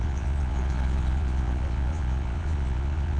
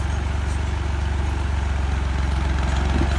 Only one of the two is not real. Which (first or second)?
first